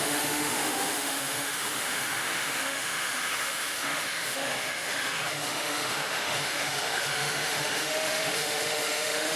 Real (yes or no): no